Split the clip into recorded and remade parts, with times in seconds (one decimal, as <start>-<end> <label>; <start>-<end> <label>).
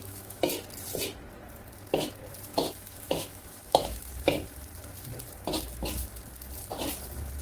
0.0-0.5 remade; 0.5-2.5 recorded; 2.5-4.0 remade; 4.0-7.4 recorded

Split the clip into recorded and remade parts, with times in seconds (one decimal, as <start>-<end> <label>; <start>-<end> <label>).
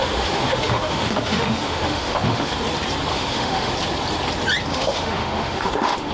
0.0-2.5 remade; 2.5-3.1 recorded; 3.1-3.7 remade; 3.7-4.7 recorded; 4.7-6.1 remade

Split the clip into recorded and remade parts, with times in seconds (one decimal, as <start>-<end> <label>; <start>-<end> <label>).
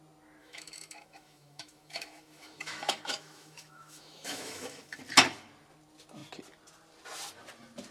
0.0-0.4 recorded; 0.4-5.0 remade; 5.0-7.9 recorded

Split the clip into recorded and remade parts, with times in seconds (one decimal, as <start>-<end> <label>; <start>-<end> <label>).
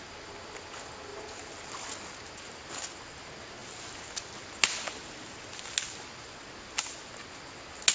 0.0-7.9 recorded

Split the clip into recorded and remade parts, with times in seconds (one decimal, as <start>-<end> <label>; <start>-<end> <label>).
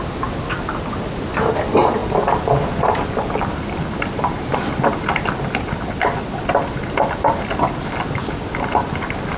0.0-9.4 recorded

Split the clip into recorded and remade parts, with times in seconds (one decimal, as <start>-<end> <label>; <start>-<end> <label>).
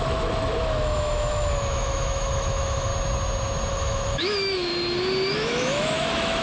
0.0-2.9 remade; 2.9-3.7 recorded; 3.7-4.7 remade; 4.7-5.3 recorded; 5.3-6.4 remade